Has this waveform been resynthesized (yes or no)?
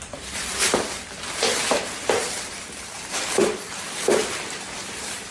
yes